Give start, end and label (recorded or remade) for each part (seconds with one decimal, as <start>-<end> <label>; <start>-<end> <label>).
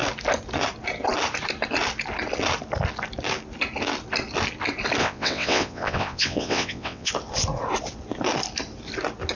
0.0-5.0 recorded; 5.0-7.1 remade; 7.1-9.3 recorded